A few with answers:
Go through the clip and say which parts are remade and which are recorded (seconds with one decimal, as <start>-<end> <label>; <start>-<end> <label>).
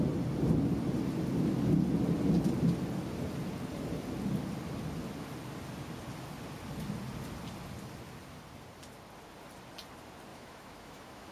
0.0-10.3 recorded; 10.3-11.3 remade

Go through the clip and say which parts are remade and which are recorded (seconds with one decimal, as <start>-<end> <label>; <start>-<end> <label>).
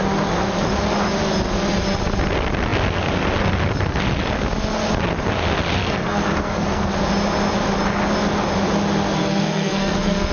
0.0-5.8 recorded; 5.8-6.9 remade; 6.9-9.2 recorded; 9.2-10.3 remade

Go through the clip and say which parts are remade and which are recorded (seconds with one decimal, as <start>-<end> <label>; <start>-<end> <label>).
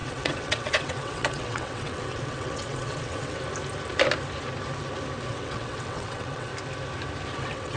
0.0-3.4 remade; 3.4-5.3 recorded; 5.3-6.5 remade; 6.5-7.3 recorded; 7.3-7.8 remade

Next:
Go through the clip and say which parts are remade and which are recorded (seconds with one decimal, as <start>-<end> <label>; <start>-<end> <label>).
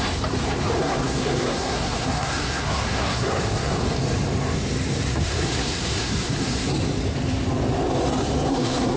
0.0-0.8 recorded; 0.8-3.8 remade; 3.8-5.1 recorded; 5.1-6.7 remade; 6.7-8.5 recorded; 8.5-9.0 remade